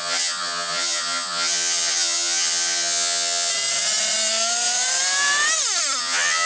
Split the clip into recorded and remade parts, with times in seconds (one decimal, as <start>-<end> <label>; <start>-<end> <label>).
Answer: 0.0-3.5 remade; 3.5-6.0 recorded; 6.0-6.5 remade